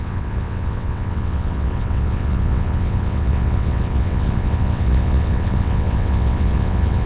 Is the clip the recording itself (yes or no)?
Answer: no